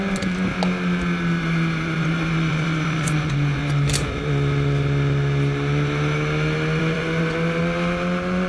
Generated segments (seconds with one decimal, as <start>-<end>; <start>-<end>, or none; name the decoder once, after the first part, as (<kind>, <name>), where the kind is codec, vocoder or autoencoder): 1.4-3.6 (vocoder, Vocos); 6.8-7.6